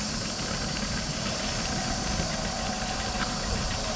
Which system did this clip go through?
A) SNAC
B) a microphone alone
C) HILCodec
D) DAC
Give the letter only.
B